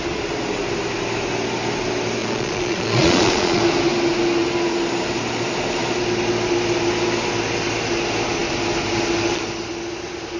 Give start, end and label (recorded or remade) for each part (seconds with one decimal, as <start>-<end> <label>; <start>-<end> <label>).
0.0-2.2 recorded; 2.2-3.6 remade; 3.6-10.4 recorded